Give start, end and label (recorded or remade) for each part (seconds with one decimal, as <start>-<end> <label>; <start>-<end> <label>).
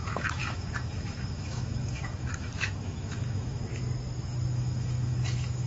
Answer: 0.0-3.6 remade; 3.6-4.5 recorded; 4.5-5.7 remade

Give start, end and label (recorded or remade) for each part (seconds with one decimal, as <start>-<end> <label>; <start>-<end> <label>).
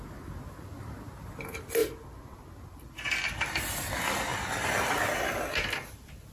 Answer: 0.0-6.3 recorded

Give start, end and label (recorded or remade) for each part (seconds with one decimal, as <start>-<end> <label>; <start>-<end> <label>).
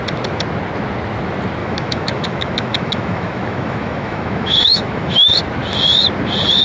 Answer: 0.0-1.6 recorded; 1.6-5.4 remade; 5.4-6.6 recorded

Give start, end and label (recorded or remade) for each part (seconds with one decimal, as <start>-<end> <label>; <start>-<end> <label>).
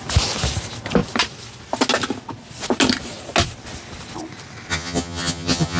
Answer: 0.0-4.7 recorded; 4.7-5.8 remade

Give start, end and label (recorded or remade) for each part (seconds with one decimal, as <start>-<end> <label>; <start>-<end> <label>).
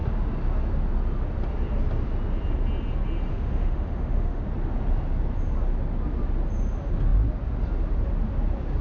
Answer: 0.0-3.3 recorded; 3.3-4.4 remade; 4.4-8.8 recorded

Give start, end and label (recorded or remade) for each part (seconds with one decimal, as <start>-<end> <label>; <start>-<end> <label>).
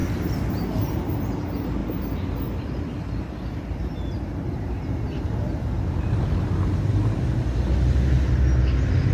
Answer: 0.0-9.1 recorded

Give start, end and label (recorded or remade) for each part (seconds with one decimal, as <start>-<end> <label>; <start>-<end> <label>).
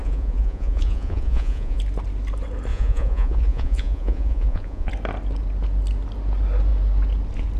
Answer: 0.0-1.8 remade; 1.8-2.7 recorded; 2.7-4.9 remade; 4.9-7.6 recorded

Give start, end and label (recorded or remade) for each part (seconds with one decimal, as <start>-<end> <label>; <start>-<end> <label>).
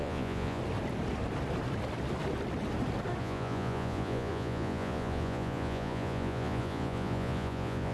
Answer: 0.0-0.6 remade; 0.6-3.2 recorded; 3.2-7.9 remade